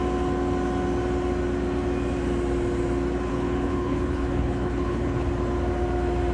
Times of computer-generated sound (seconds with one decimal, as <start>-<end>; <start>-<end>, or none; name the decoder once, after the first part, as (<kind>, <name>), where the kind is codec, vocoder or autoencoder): 3.3-5.3 (codec, HILCodec)